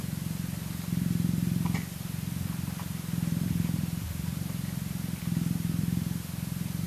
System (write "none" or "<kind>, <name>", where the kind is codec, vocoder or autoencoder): none